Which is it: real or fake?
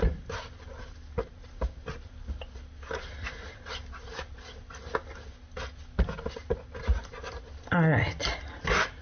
real